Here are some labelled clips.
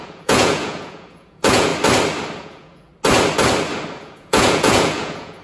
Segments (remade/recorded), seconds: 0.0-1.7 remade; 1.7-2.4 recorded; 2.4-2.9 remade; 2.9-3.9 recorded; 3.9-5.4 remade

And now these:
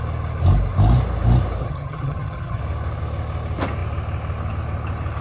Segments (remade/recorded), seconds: 0.0-1.6 recorded; 1.6-2.6 remade; 2.6-5.2 recorded

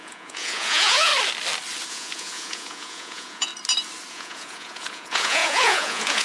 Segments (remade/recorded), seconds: 0.0-1.1 remade; 1.1-1.9 recorded; 1.9-3.5 remade; 3.5-4.1 recorded; 4.1-6.2 remade

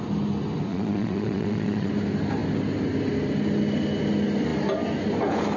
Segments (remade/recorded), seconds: 0.0-0.7 recorded; 0.7-1.9 remade; 1.9-5.6 recorded

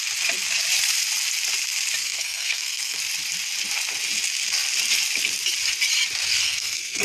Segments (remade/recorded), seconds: 0.0-2.0 recorded; 2.0-3.0 remade; 3.0-6.3 recorded; 6.3-7.0 remade

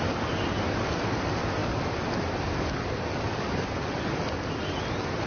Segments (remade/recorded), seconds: 0.0-5.3 recorded

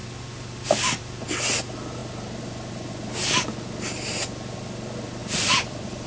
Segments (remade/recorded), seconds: 0.0-5.2 recorded; 5.2-6.1 remade

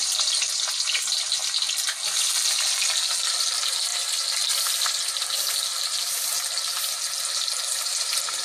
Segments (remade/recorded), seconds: 0.0-1.4 remade; 1.4-3.3 recorded; 3.3-3.9 remade; 3.9-7.2 recorded; 7.2-8.4 remade